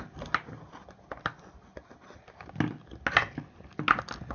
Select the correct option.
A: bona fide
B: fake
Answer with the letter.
A